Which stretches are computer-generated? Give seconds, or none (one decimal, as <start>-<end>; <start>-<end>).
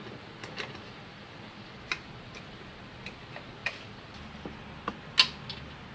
1.1-2.6; 3.6-4.1